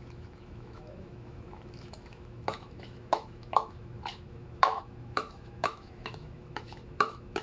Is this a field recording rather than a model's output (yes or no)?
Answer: no